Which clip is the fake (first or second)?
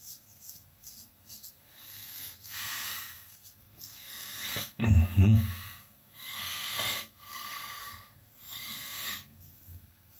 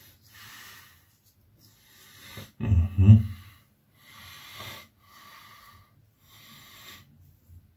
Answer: first